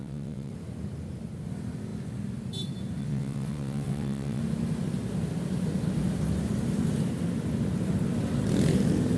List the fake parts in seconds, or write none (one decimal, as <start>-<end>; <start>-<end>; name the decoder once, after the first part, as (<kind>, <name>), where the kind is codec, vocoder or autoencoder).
0.0-0.5 (vocoder, WaveNeXt); 3.0-4.4